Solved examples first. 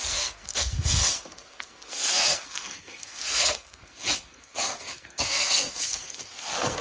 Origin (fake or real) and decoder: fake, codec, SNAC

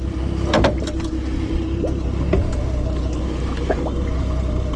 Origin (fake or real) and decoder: real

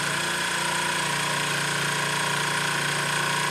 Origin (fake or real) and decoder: real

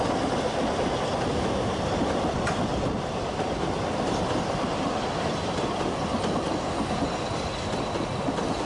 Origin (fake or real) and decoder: real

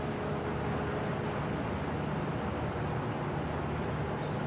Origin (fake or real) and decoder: real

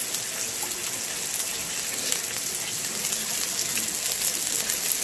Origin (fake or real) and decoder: real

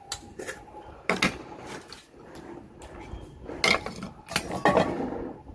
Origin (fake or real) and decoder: real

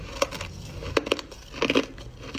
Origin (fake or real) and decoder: real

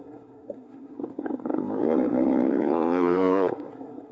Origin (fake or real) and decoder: fake, codec, SNAC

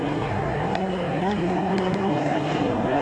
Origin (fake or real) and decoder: fake, codec, SNAC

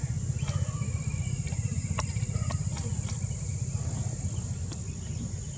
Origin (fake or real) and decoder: real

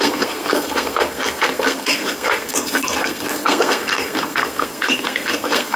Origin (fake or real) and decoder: fake, codec, SNAC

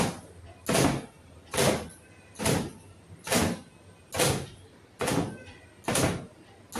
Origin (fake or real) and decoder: real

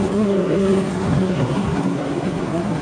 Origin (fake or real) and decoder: fake, codec, SNAC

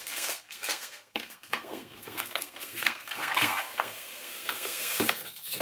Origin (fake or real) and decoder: fake, codec, SNAC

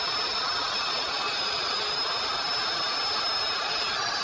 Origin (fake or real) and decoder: real